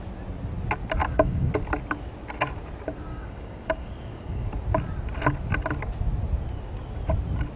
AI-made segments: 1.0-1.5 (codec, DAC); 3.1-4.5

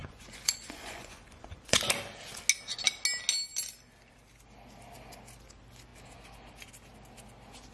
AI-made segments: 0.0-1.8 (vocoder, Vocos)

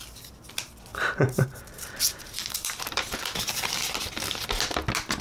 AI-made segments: 0.9-4.0 (vocoder, BigVGAN v2)